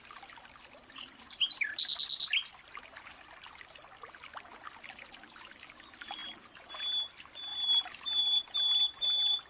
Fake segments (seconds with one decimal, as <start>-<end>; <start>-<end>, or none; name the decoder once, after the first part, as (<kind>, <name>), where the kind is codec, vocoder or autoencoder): 6.2-6.7 (vocoder, BigVGAN v2); 7.5-8.2